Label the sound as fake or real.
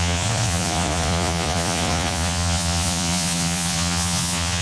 fake